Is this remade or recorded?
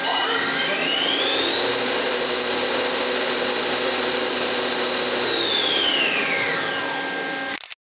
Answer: recorded